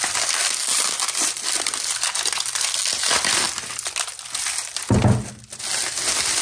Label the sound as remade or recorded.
recorded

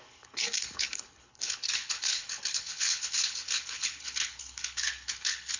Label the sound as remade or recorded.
remade